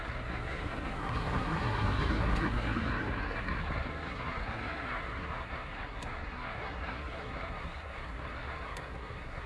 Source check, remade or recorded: remade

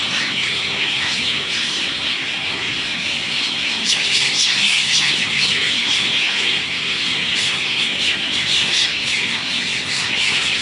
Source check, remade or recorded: remade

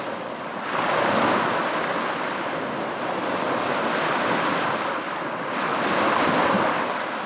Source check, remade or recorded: recorded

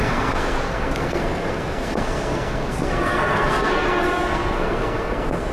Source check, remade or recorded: remade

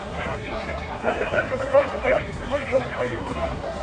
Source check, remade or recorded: remade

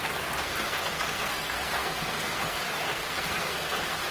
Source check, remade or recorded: remade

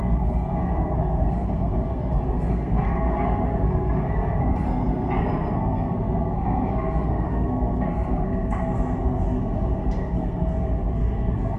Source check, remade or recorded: remade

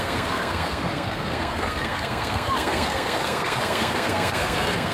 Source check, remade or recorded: remade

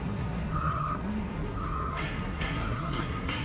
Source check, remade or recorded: remade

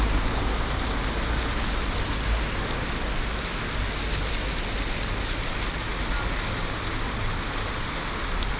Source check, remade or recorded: recorded